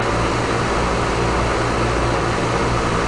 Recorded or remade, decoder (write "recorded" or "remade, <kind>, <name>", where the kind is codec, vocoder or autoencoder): recorded